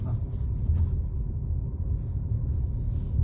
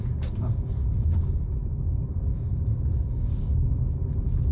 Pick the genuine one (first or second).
first